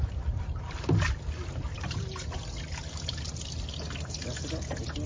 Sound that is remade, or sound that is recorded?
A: recorded